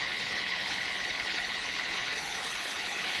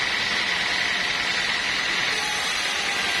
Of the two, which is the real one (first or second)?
second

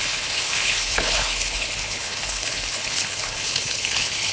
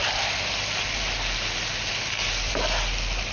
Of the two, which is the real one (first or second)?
second